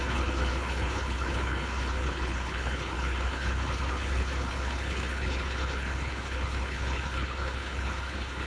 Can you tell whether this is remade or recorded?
remade